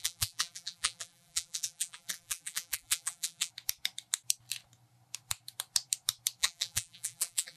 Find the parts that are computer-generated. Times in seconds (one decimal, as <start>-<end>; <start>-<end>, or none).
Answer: 0.0-3.5; 6.4-7.6